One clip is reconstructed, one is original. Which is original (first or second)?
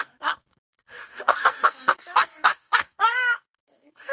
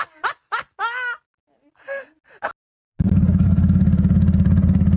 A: second